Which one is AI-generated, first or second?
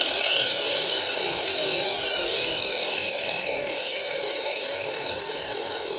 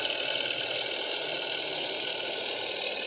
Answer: first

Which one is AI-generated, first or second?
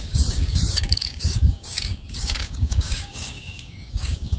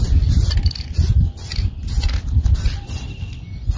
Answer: first